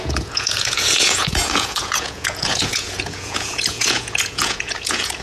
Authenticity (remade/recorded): remade